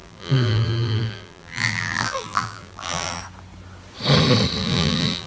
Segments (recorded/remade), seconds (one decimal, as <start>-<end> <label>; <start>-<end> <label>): 0.0-3.2 remade; 3.2-4.6 recorded; 4.6-5.3 remade